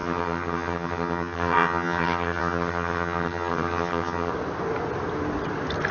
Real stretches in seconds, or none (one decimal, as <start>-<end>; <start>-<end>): 4.3-5.9